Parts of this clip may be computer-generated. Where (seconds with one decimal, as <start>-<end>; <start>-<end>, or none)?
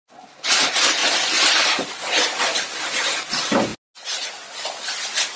none